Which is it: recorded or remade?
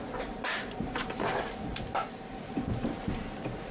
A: remade